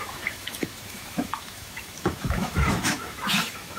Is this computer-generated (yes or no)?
yes